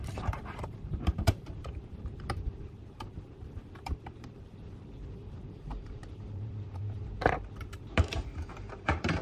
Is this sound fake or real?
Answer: fake